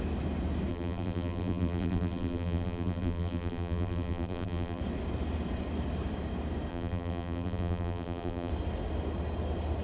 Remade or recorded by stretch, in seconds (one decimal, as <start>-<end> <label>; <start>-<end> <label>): 0.0-0.7 recorded; 0.7-4.8 remade; 4.8-6.7 recorded; 6.7-8.5 remade; 8.5-9.8 recorded

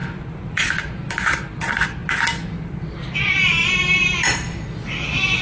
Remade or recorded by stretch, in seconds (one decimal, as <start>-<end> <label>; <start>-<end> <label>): 0.0-5.4 recorded

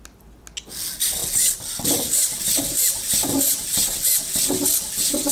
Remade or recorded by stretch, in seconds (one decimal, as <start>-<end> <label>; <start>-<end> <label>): 0.0-5.3 recorded

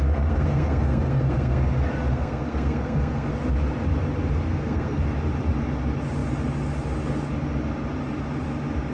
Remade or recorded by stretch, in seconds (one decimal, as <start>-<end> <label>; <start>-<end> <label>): 0.0-1.7 remade; 1.7-2.1 recorded; 2.1-3.3 remade; 3.3-4.5 recorded; 4.5-5.0 remade; 5.0-8.9 recorded

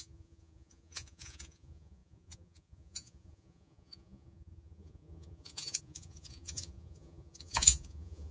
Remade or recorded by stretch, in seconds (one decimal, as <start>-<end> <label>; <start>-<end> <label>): 0.0-8.3 remade